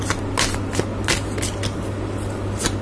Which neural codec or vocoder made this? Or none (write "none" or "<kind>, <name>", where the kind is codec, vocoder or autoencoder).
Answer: none